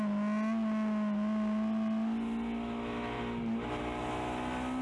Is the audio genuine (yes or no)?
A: yes